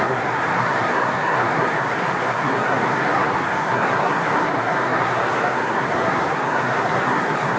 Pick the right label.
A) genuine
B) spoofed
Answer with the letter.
B